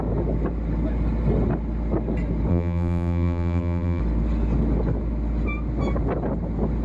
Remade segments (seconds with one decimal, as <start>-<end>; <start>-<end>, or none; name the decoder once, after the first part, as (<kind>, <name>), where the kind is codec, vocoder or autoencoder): 2.5-4.0 (vocoder, BigVGAN v2)